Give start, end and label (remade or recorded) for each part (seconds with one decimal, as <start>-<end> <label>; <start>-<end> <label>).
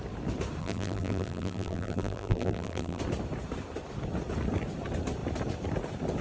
0.0-0.6 recorded; 0.6-3.0 remade; 3.0-6.2 recorded